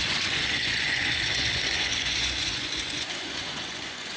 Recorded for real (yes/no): no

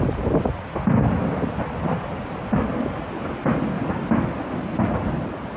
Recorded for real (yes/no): yes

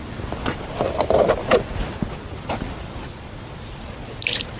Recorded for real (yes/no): no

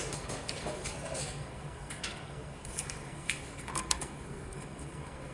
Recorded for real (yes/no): no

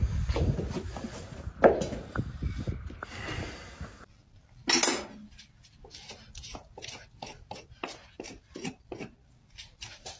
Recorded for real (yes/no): yes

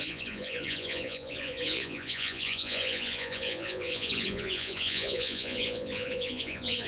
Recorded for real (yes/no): no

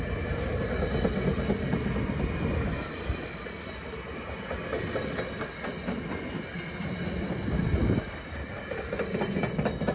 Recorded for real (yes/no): yes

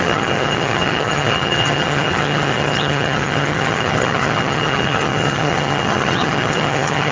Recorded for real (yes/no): no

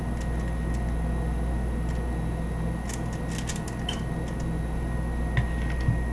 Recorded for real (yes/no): yes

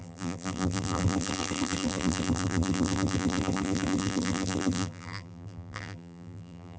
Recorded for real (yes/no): no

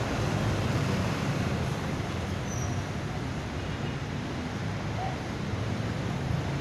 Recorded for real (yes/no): yes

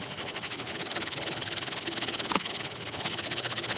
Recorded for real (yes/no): no